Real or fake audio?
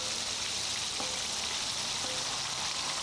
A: real